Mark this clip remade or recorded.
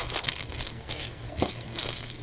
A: remade